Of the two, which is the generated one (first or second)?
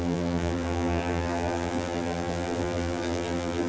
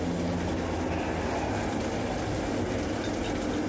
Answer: first